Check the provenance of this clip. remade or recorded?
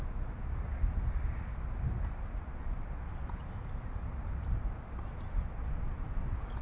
recorded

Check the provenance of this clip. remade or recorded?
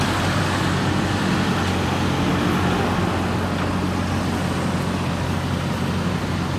recorded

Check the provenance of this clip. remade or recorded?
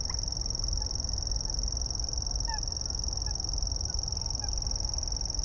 recorded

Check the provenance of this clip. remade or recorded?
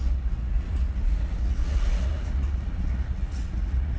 remade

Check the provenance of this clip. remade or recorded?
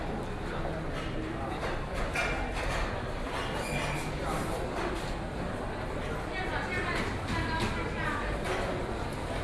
recorded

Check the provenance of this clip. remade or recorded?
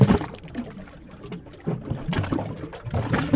recorded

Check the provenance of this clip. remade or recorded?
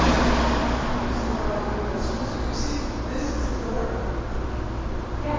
recorded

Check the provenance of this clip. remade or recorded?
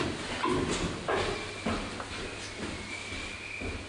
recorded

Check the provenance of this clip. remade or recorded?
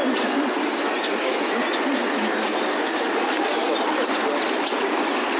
recorded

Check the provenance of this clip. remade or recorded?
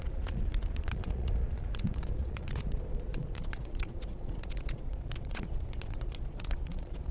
remade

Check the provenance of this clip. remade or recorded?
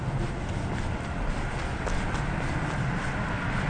recorded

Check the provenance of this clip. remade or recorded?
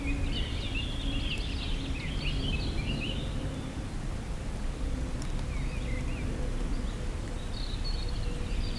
recorded